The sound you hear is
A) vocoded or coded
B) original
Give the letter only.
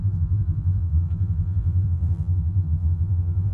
A